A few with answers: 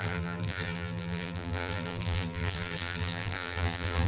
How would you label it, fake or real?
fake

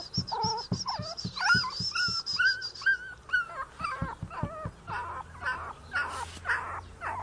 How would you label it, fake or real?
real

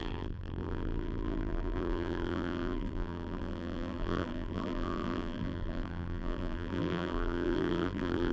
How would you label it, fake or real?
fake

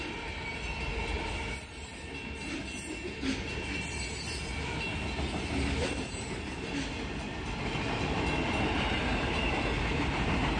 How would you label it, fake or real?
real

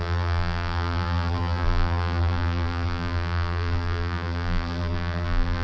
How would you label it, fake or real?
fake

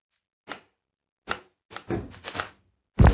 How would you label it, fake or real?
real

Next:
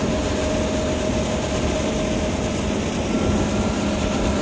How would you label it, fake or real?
real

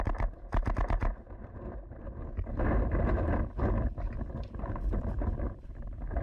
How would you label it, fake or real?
fake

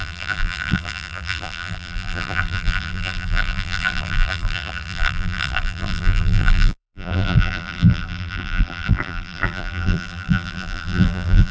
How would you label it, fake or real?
fake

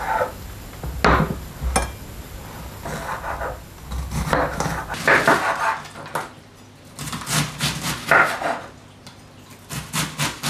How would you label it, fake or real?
real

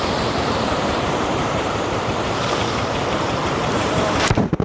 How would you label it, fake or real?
fake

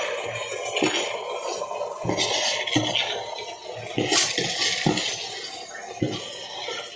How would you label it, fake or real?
real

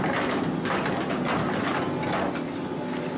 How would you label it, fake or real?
real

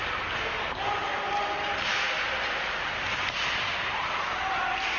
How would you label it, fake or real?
real